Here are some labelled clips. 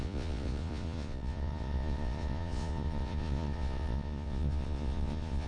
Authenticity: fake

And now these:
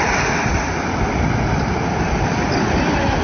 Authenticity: real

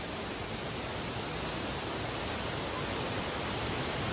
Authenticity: real